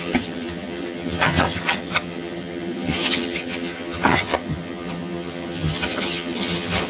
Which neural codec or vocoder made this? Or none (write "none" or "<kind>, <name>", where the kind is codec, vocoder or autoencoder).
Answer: vocoder, HiFi-GAN